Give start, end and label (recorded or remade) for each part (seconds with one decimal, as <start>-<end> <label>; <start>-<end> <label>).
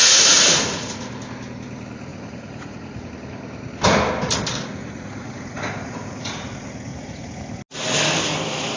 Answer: 0.0-1.0 remade; 1.0-2.1 recorded; 2.1-3.1 remade; 3.1-4.8 recorded; 4.8-6.3 remade; 6.3-6.9 recorded; 6.9-7.6 remade; 7.6-8.8 recorded